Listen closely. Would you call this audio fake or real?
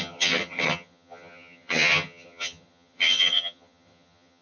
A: fake